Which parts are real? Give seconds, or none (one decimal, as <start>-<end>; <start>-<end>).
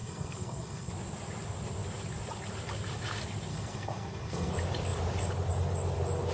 0.9-3.5; 4.5-6.3